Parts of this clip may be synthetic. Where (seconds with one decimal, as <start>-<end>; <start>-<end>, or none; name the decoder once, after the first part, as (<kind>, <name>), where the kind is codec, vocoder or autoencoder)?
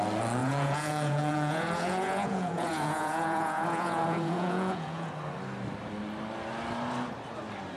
0.4-5.1 (vocoder, Vocos)